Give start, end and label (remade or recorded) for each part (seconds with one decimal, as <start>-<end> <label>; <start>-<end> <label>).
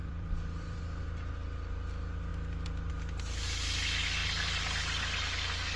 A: 0.0-0.8 remade; 0.8-5.8 recorded